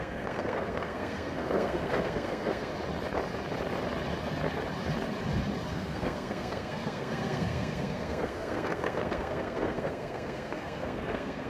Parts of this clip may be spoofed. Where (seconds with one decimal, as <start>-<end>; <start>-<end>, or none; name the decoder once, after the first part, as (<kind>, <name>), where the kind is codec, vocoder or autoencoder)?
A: 0.0-2.7 (codec, SNAC); 5.7-11.5